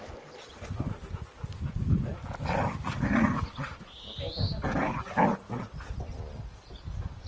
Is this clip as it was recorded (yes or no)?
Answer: yes